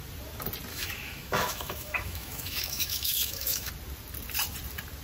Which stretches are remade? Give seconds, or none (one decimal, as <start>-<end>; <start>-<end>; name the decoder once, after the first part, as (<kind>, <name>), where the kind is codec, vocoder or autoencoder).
0.7-3.7 (autoencoder, DAC-VAE)